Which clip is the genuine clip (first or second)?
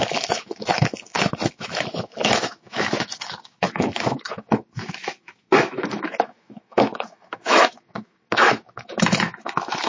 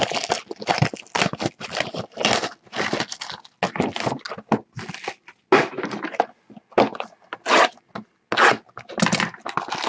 second